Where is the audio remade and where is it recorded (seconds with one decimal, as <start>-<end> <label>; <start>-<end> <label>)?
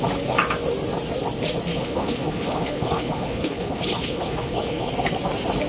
0.0-1.7 recorded; 1.7-4.9 remade; 4.9-5.7 recorded